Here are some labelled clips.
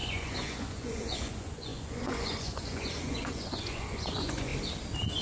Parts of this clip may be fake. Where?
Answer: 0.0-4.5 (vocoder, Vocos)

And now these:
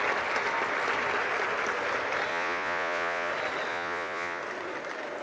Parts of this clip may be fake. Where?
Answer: 2.3-3.3 (vocoder, Vocos); 3.7-4.4

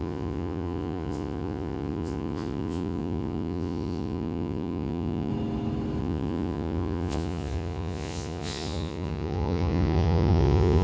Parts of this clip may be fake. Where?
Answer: 0.0-5.3 (vocoder, Vocos); 6.0-10.8

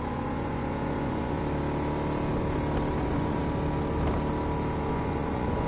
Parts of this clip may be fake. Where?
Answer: 0.0-1.4 (vocoder, Vocos); 3.0-3.4; 4.9-5.7

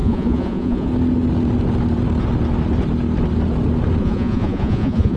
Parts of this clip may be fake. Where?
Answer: 0.0-0.9 (vocoder, Vocos); 4.0-5.2